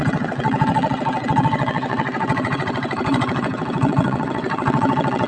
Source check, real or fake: fake